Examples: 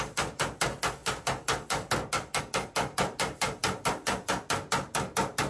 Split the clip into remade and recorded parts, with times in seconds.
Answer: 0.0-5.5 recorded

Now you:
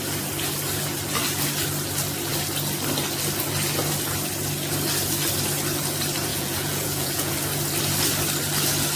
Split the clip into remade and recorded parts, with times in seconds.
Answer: 0.0-6.3 recorded; 6.3-7.3 remade; 7.3-9.0 recorded

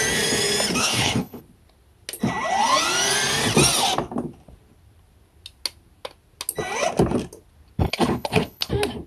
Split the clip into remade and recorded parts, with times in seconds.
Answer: 0.0-0.8 recorded; 0.8-1.4 remade; 1.4-7.8 recorded; 7.8-8.7 remade; 8.7-9.1 recorded

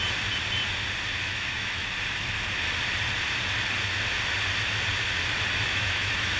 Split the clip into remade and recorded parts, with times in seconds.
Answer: 0.0-1.2 recorded; 1.2-1.8 remade; 1.8-5.5 recorded; 5.5-6.4 remade

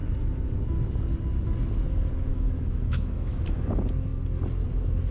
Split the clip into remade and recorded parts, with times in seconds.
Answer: 0.0-2.3 recorded; 2.3-3.4 remade; 3.4-5.1 recorded

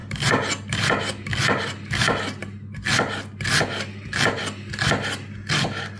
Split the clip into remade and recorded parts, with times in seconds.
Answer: 0.0-0.8 remade; 0.8-6.0 recorded

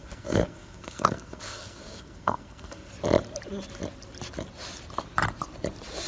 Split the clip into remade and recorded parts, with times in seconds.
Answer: 0.0-2.9 remade; 2.9-6.1 recorded

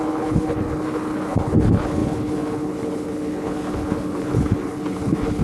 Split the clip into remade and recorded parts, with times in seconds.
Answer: 0.0-5.4 remade